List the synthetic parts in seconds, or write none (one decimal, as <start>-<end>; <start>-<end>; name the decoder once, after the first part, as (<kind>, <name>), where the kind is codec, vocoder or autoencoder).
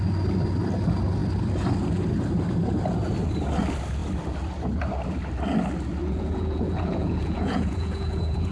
6.0-8.5 (vocoder, Vocos)